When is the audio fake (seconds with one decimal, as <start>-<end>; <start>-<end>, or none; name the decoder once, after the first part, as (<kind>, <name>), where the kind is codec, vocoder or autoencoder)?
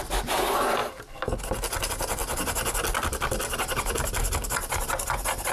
none